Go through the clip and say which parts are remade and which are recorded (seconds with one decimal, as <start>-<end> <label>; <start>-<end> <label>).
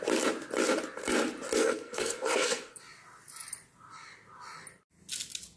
0.0-1.6 recorded; 1.6-2.8 remade; 2.8-5.6 recorded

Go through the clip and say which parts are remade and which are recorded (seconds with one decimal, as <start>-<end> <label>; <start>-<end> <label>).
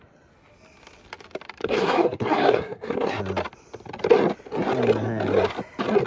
0.0-1.6 recorded; 1.6-3.2 remade; 3.2-6.1 recorded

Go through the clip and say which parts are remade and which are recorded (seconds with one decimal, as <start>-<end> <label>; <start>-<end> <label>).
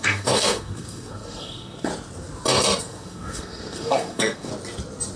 0.0-1.9 remade; 1.9-2.8 recorded; 2.8-4.5 remade; 4.5-5.2 recorded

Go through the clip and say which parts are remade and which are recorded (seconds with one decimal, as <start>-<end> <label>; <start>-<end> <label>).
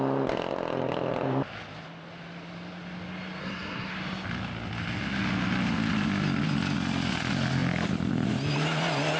0.0-3.4 recorded; 3.4-3.9 remade; 3.9-9.2 recorded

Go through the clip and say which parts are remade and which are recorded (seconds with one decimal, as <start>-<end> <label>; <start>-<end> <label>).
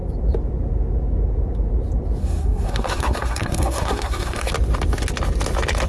0.0-2.2 recorded; 2.2-4.5 remade; 4.5-5.9 recorded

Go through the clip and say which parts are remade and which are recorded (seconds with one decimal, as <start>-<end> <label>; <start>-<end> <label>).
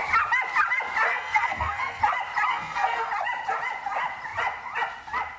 0.0-1.1 recorded; 1.1-2.0 remade; 2.0-2.5 recorded; 2.5-3.1 remade; 3.1-5.4 recorded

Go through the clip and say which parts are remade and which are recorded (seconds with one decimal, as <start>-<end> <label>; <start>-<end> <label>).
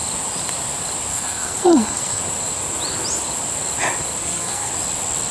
0.0-1.1 recorded; 1.1-2.2 remade; 2.2-4.2 recorded; 4.2-4.7 remade; 4.7-5.3 recorded